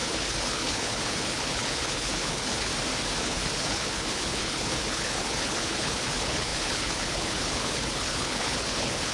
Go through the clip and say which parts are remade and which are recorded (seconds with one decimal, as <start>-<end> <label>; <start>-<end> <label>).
0.0-2.7 remade; 2.7-3.2 recorded; 3.2-9.1 remade